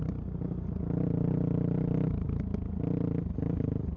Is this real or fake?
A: real